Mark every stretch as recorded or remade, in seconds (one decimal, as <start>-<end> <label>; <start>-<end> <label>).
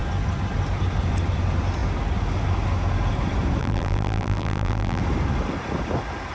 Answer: 0.0-3.6 recorded; 3.6-5.0 remade; 5.0-6.3 recorded